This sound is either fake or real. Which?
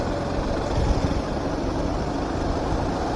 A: real